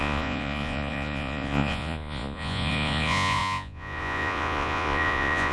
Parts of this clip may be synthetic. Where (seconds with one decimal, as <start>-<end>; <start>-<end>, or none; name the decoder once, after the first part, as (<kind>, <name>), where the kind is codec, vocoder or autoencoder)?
0.0-5.5 (vocoder, Vocos)